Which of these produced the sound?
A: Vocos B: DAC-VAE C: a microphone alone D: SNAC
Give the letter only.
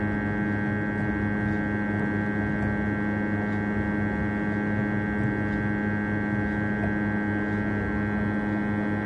C